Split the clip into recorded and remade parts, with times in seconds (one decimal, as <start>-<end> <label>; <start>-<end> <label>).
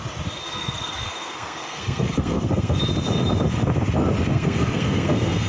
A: 0.0-0.4 recorded; 0.4-2.8 remade; 2.8-4.3 recorded; 4.3-5.5 remade